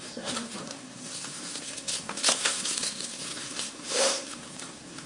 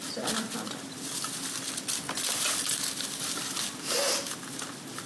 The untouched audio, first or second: second